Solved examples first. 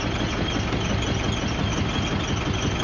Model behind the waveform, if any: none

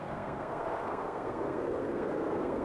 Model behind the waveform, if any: codec, SNAC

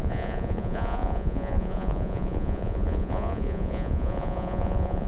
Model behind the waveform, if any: vocoder, Vocos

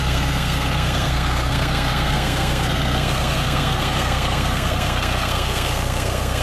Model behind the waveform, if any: codec, SNAC